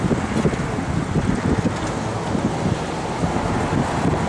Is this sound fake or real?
real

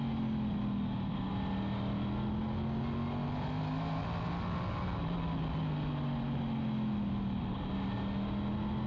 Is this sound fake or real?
real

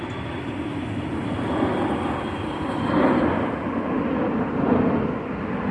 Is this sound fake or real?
real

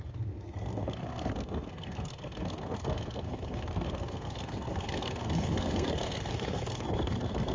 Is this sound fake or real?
fake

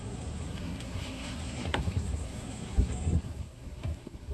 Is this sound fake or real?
fake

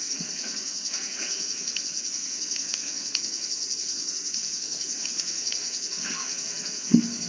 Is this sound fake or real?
fake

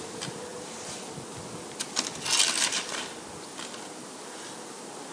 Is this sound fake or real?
real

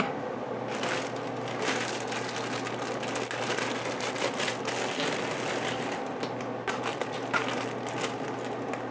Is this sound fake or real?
real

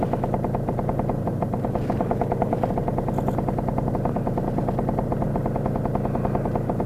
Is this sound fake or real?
real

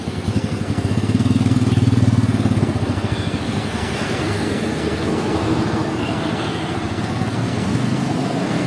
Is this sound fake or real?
fake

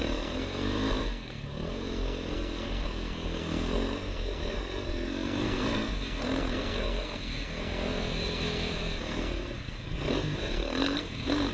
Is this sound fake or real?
fake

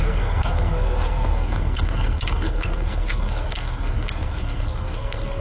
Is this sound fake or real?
fake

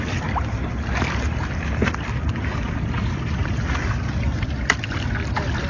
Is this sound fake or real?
real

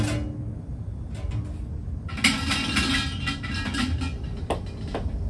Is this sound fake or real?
real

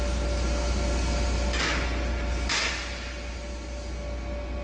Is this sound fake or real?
real